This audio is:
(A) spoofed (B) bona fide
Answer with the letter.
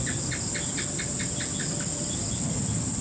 B